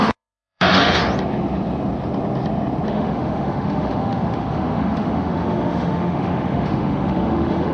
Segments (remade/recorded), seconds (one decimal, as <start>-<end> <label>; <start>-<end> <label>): 0.0-1.0 remade; 1.0-2.9 recorded; 2.9-7.7 remade